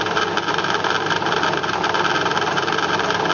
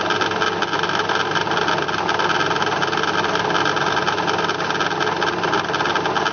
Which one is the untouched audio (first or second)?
second